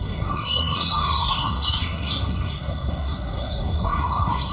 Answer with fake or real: fake